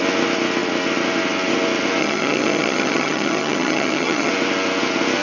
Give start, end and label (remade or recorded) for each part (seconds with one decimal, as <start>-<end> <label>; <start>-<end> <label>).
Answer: 0.0-2.0 recorded; 2.0-4.3 remade; 4.3-5.2 recorded